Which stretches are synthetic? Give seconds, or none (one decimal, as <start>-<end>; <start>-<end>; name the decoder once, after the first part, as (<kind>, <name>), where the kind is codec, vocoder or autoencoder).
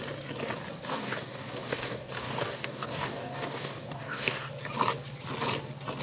0.9-4.5 (codec, DAC)